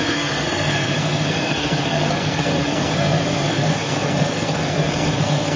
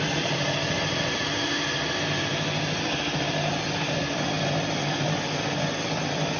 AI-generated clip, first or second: first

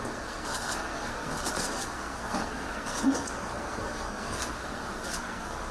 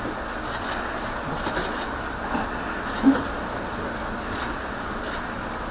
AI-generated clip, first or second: first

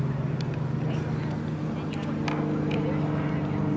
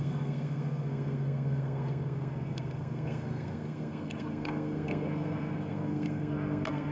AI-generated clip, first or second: second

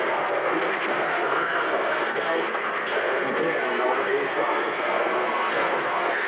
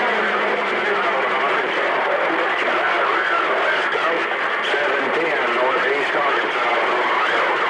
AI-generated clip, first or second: first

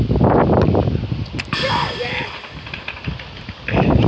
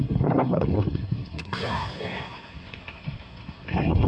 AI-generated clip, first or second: second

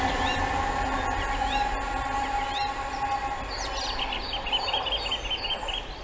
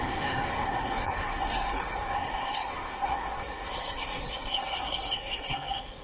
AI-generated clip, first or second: second